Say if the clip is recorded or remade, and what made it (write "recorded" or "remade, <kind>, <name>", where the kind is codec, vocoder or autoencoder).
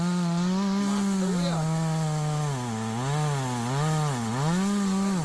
recorded